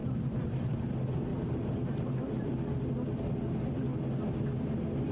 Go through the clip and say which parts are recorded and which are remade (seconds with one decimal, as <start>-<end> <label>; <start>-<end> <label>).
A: 0.0-0.9 remade; 0.9-1.3 recorded; 1.3-2.5 remade; 2.5-5.1 recorded